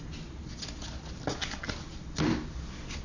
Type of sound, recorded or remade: recorded